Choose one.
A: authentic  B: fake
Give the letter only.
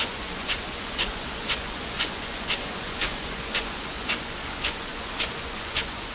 B